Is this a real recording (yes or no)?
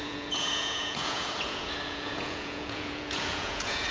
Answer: no